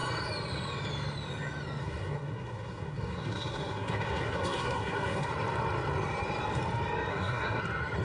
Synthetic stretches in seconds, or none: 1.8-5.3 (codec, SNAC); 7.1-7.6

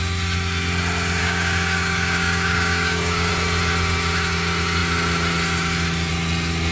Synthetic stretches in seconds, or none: 1.2-3.3 (codec, DAC)

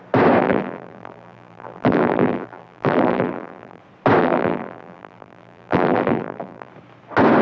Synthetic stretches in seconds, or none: 0.4-3.8 (vocoder, BigVGAN v2); 4.2-6.7

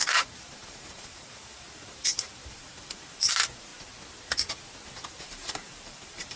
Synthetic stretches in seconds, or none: 0.0-3.7 (vocoder, BigVGAN v2); 5.2-6.4

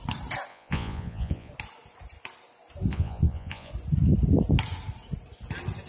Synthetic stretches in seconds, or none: 0.5-1.5 (vocoder, Vocos); 2.9-3.7

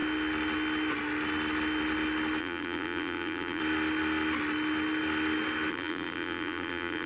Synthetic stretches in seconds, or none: 2.4-3.6 (vocoder, BigVGAN v2); 5.7-7.1

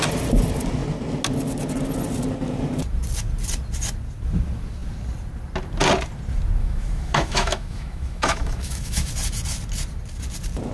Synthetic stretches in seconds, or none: 6.6-9.1 (autoencoder, DAC-VAE)

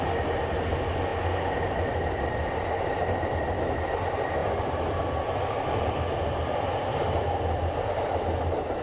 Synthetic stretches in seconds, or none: none